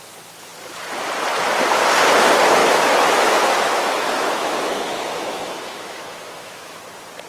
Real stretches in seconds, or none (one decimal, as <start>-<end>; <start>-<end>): 0.0-2.6; 6.8-7.3